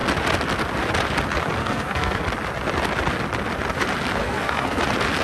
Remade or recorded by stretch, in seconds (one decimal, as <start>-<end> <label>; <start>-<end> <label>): 0.0-1.6 recorded; 1.6-2.2 remade; 2.2-4.2 recorded; 4.2-4.8 remade; 4.8-5.2 recorded